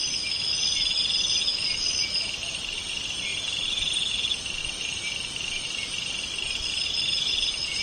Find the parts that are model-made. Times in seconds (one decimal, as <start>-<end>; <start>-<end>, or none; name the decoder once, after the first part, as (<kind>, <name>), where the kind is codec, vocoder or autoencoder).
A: 3.3-4.1 (vocoder, BigVGAN v2); 4.6-7.3